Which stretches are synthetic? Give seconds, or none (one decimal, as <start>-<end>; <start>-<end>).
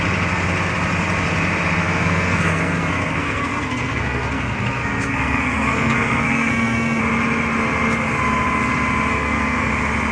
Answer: 1.8-7.0; 9.1-9.7